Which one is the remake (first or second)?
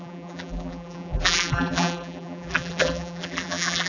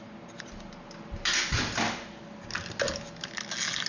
first